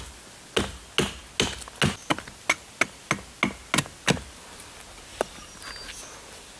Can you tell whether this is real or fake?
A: real